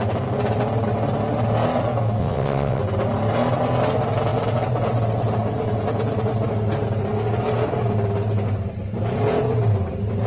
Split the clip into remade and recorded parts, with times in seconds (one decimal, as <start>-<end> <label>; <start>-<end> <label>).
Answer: 0.0-2.2 recorded; 2.2-2.8 remade; 2.8-10.3 recorded